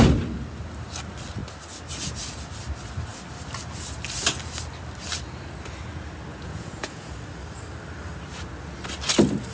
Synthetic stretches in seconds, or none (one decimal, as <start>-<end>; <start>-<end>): 6.3-7.1